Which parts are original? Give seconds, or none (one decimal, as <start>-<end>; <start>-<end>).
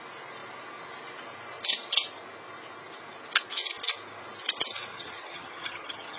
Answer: 0.0-4.9